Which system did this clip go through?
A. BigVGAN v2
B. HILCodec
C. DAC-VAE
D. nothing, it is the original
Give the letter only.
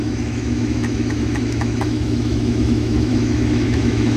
C